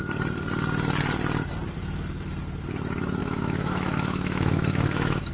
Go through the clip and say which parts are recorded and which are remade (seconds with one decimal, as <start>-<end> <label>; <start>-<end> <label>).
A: 0.0-3.2 recorded; 3.2-5.3 remade